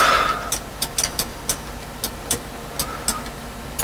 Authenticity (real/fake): real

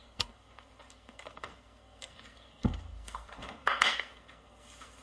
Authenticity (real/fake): fake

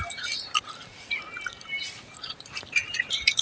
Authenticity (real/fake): fake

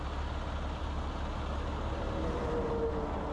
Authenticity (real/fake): real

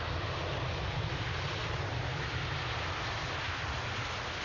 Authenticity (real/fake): real